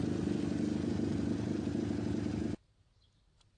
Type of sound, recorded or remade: recorded